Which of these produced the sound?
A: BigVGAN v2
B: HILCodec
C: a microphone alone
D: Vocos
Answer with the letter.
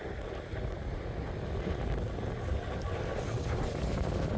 C